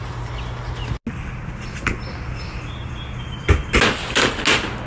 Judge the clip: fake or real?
real